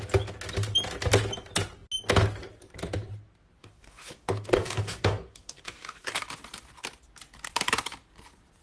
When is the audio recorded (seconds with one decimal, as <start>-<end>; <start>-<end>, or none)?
0.0-3.6; 6.2-8.6